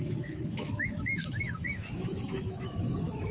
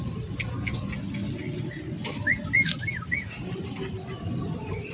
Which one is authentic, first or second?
second